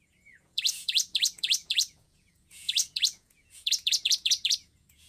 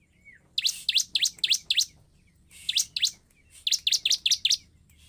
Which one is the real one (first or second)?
second